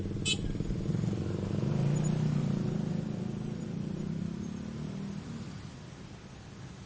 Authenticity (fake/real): real